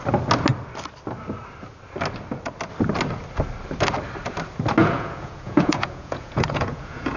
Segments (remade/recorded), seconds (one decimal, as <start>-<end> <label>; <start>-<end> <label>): 0.0-4.8 recorded; 4.8-7.2 remade